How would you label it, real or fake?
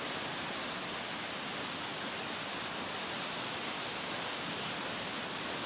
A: real